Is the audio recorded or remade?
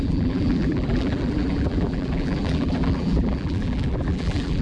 remade